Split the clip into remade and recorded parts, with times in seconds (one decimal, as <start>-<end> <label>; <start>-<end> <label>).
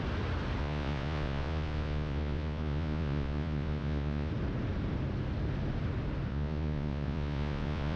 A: 0.0-0.6 recorded; 0.6-4.3 remade; 4.3-6.3 recorded; 6.3-8.0 remade